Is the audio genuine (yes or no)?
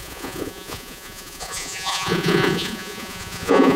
no